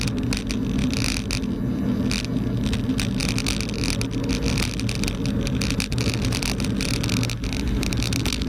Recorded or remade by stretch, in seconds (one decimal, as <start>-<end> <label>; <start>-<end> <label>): 0.0-8.5 recorded